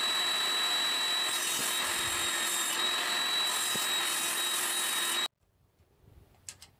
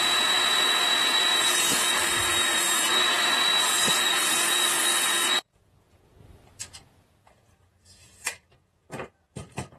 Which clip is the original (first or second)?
first